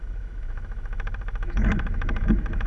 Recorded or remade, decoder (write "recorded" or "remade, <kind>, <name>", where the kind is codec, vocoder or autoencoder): remade, autoencoder, DAC-VAE